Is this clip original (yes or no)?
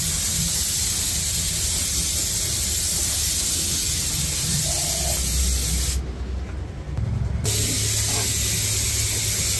yes